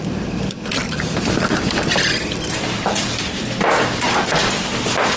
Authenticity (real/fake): fake